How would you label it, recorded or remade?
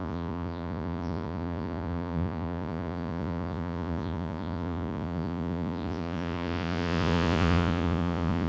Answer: remade